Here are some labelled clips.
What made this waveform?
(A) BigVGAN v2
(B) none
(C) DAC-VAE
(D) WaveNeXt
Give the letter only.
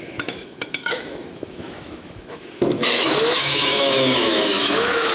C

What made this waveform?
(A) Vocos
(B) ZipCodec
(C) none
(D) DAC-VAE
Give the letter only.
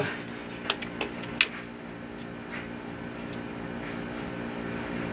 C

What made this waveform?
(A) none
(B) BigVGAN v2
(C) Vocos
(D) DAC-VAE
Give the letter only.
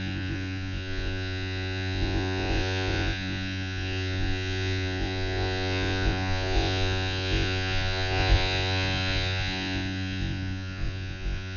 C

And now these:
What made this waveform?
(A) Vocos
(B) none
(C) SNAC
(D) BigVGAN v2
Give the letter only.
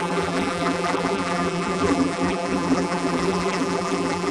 D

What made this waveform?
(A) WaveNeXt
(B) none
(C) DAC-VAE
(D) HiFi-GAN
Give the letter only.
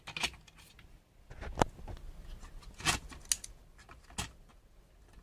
B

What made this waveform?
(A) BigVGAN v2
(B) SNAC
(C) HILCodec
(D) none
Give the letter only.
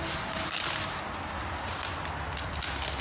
D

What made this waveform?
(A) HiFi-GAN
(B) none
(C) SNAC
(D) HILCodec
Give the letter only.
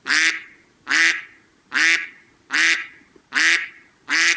B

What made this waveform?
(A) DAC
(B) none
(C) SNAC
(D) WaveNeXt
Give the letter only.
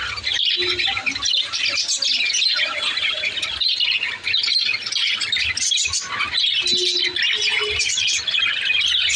B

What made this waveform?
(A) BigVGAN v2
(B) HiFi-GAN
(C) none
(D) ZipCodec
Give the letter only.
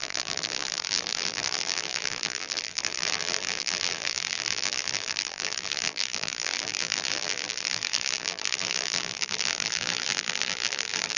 A